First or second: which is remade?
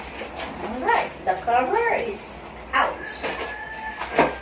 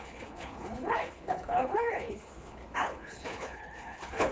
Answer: second